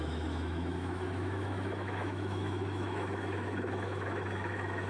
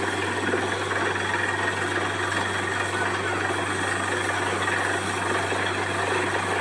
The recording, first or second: second